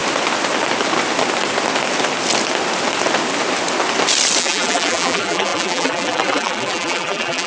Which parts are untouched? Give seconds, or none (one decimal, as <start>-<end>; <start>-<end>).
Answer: 0.0-4.4

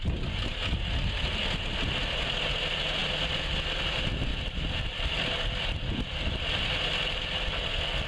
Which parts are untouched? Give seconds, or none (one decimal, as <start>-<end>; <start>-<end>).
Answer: 0.0-3.0; 3.8-4.3; 6.6-8.1

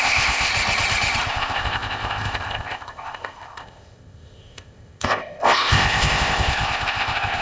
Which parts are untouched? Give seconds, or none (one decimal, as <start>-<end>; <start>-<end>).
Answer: 0.5-1.3